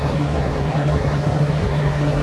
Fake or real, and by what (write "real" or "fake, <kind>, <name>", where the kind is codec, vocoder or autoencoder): fake, codec, SNAC